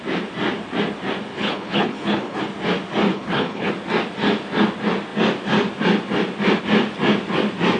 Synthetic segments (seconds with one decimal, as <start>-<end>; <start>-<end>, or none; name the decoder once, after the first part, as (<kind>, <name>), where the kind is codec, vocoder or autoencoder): 1.3-2.4 (codec, HILCodec); 3.1-3.7